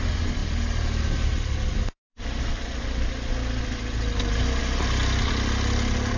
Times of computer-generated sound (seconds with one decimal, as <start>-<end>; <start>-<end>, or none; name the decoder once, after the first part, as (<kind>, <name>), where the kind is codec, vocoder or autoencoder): none